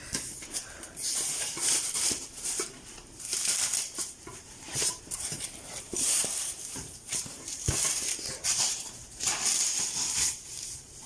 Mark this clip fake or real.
fake